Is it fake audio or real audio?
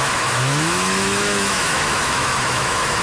fake